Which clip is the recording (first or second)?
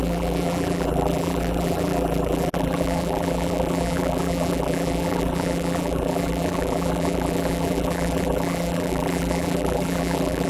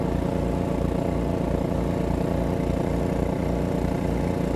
second